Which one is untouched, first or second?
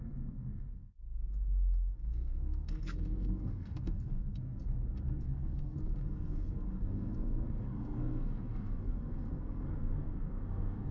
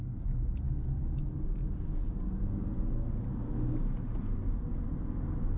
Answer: second